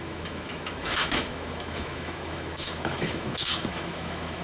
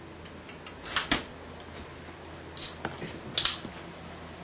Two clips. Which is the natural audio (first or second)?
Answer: second